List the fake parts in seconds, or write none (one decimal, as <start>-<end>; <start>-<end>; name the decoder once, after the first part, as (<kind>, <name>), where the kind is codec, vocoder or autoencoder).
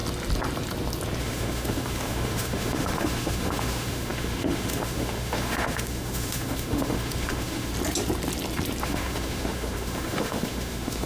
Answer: 1.2-7.7 (autoencoder, DAC-VAE); 8.8-11.1